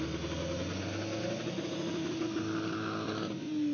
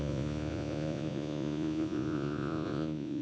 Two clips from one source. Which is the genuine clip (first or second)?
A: first